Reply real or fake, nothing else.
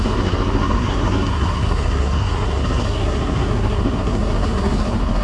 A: fake